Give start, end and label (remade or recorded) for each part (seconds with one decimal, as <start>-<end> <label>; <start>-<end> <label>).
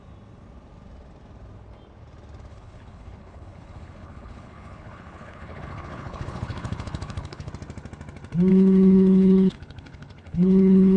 0.0-2.5 recorded; 2.5-7.5 remade; 7.5-8.5 recorded; 8.5-11.0 remade